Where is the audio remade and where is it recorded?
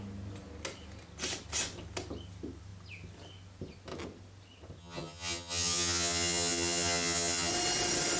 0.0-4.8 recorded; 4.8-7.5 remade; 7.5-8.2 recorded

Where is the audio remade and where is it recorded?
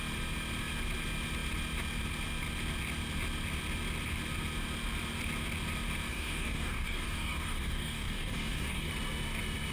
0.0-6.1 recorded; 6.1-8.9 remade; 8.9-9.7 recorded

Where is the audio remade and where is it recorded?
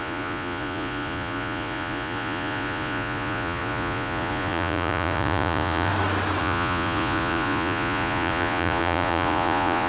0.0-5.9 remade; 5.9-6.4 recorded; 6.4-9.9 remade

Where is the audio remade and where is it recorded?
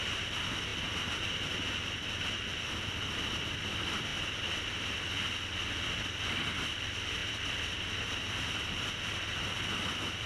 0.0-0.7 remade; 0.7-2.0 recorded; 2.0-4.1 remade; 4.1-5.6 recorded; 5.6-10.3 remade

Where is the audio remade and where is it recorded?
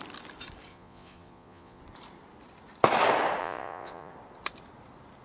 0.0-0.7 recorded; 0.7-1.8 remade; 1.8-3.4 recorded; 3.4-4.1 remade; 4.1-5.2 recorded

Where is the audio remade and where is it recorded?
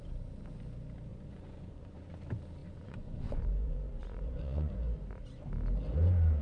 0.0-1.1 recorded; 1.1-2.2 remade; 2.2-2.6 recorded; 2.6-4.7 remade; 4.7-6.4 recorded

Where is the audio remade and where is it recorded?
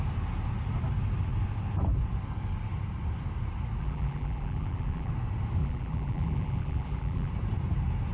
0.0-3.8 recorded; 3.8-5.1 remade; 5.1-5.6 recorded; 5.6-7.3 remade; 7.3-8.1 recorded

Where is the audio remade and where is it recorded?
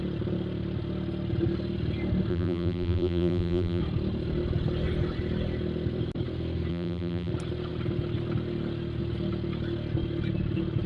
0.0-2.3 recorded; 2.3-3.8 remade; 3.8-6.7 recorded; 6.7-7.3 remade; 7.3-10.9 recorded